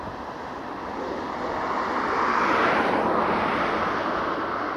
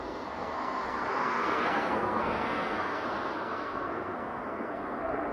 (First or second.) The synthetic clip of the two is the second